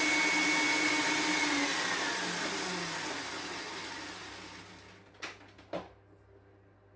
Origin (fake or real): real